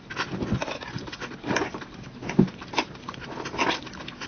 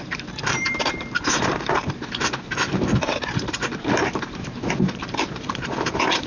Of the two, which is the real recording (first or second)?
first